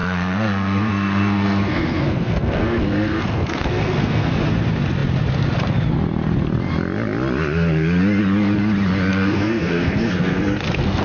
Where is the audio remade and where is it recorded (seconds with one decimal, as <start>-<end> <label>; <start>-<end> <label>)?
0.0-4.3 remade; 4.3-9.1 recorded; 9.1-11.0 remade